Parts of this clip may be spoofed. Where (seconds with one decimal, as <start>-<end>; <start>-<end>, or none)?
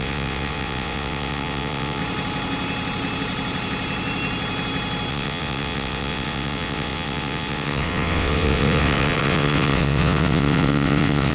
0.0-2.0; 5.1-11.3